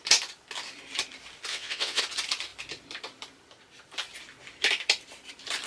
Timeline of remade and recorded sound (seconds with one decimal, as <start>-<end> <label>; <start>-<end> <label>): 0.0-1.5 recorded; 1.5-2.0 remade; 2.0-5.7 recorded